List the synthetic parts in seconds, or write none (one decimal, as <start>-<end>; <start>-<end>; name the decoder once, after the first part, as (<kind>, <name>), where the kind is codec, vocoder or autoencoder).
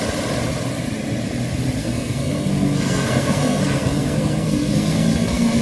1.8-5.6 (codec, SNAC)